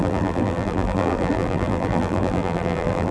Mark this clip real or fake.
fake